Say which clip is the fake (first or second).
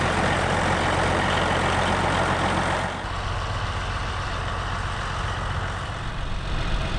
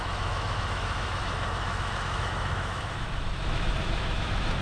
second